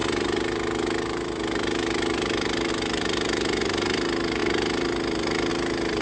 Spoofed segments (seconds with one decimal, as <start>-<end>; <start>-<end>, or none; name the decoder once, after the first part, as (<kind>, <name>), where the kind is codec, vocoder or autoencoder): none